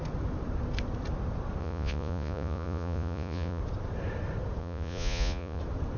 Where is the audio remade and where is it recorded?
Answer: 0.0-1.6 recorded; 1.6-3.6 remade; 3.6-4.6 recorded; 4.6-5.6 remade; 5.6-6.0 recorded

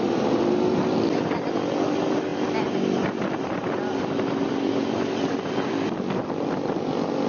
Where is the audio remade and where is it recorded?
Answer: 0.0-7.3 recorded

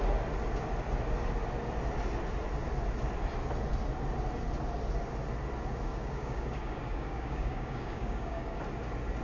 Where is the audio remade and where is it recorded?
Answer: 0.0-5.9 recorded; 5.9-8.6 remade; 8.6-9.2 recorded

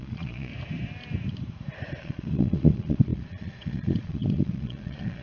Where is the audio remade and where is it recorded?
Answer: 0.0-0.5 remade; 0.5-2.0 recorded; 2.0-5.2 remade

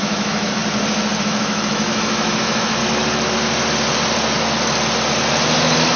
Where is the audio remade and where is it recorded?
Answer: 0.0-0.6 remade; 0.6-1.2 recorded; 1.2-2.8 remade; 2.8-6.0 recorded